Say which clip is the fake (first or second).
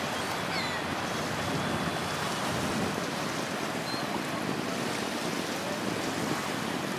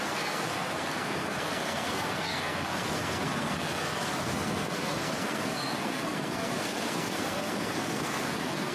second